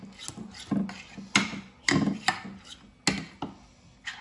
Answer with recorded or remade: recorded